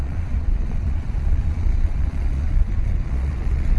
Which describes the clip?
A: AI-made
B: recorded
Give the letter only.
A